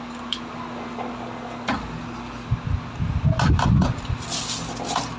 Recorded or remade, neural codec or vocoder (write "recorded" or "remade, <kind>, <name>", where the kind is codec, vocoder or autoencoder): recorded